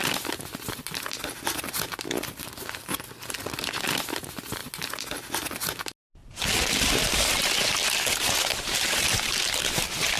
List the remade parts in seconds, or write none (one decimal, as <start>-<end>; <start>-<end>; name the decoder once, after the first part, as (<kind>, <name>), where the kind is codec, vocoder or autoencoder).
none